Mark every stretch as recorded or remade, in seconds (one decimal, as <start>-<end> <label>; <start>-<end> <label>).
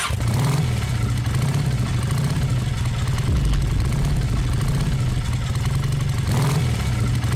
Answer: 0.0-7.4 recorded